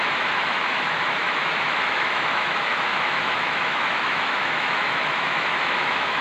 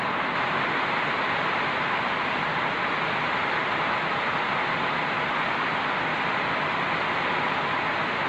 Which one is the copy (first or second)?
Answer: first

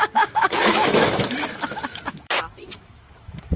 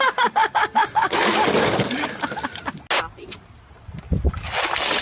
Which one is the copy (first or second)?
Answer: first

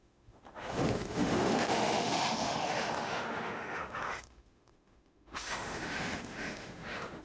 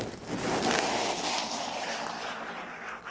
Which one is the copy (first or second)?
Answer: first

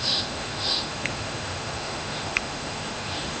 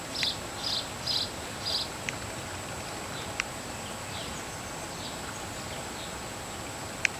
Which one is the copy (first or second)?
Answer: first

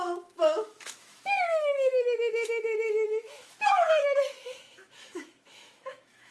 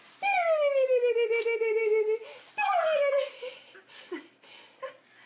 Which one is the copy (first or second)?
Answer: first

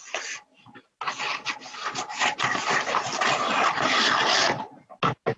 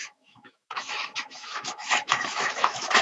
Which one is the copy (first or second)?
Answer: second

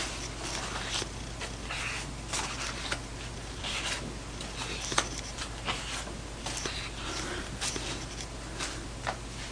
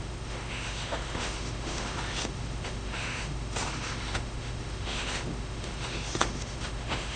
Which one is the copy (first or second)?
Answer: second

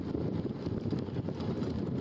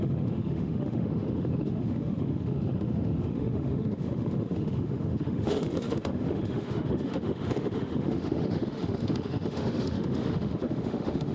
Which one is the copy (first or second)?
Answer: second